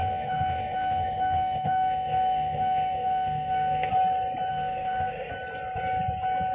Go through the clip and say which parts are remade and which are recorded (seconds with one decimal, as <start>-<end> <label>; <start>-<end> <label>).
0.0-3.9 remade; 3.9-4.5 recorded; 4.5-5.3 remade; 5.3-6.5 recorded